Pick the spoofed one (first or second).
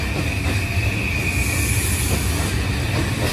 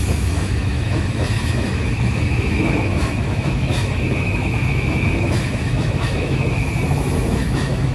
second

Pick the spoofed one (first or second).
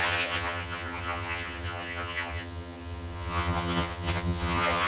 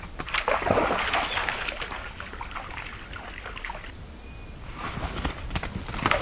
first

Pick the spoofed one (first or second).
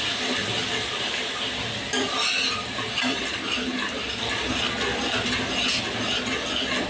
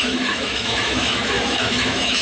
second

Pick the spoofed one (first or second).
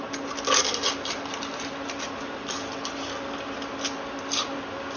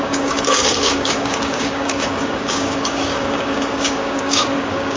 second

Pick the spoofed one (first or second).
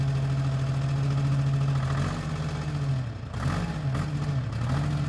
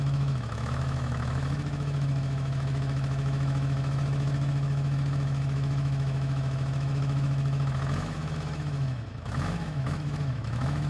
second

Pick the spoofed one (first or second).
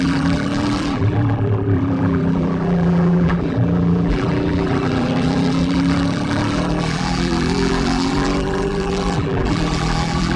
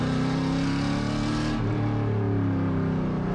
first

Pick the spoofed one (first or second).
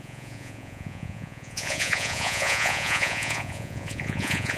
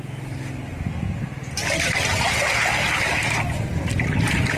first